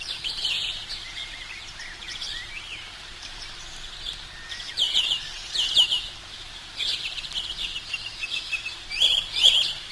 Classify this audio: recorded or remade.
remade